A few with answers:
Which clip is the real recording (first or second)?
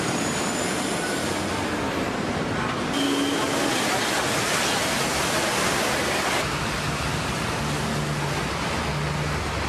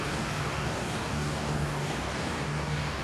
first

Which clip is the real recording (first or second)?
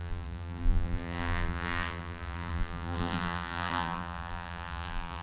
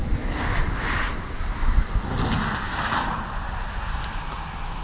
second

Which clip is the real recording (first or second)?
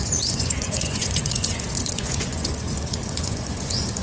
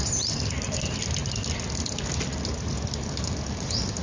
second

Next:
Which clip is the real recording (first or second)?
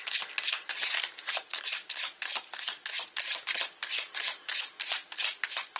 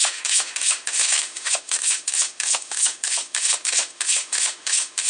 first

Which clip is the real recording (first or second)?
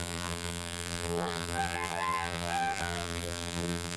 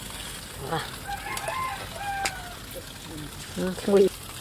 second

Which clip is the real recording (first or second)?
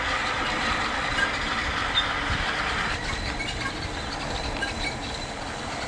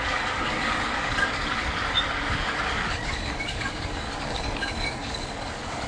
first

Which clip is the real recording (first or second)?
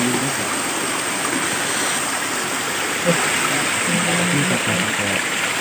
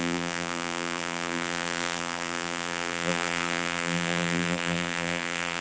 first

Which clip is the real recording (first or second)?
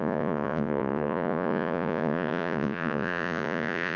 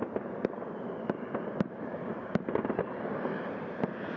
second